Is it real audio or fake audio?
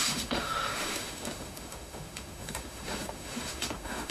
fake